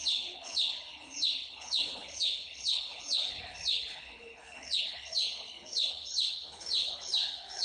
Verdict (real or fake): fake